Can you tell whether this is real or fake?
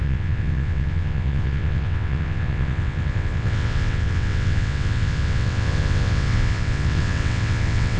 fake